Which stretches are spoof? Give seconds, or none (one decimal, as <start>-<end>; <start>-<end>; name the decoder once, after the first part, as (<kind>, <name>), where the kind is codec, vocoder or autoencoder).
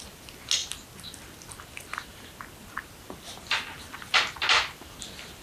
none